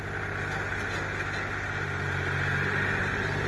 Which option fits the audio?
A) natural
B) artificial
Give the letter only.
A